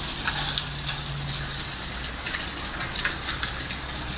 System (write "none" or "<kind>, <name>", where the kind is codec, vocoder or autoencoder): none